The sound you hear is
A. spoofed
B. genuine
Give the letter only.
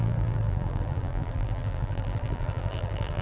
A